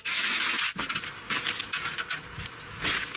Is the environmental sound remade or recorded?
recorded